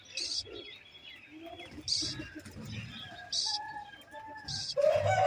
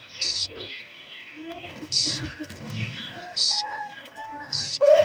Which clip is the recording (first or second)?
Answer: first